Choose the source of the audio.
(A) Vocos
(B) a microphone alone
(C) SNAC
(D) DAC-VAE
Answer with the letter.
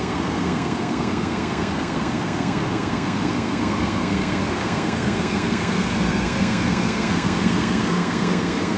C